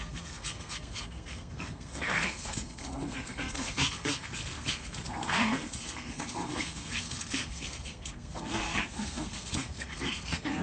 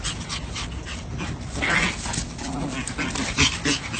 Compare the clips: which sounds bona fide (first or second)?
second